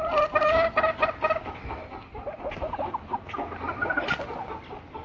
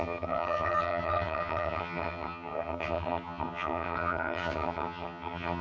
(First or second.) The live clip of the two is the first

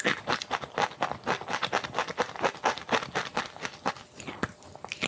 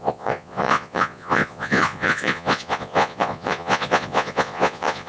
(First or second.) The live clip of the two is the first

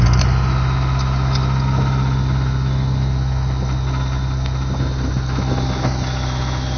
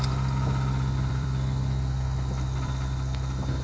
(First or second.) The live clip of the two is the first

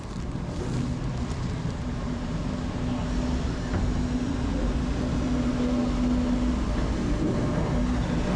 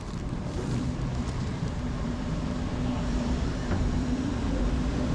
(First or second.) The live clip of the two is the first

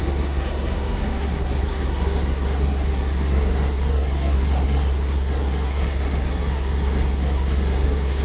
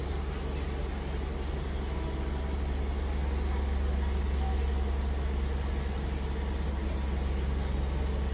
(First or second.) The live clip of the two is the second